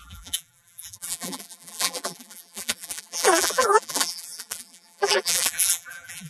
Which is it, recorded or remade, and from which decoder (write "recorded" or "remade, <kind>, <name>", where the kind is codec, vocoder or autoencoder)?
remade, vocoder, BigVGAN v2